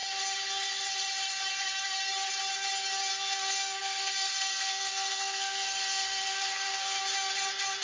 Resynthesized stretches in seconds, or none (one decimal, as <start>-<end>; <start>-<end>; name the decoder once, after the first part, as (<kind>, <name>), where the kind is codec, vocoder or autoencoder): 3.1-7.0 (codec, SNAC)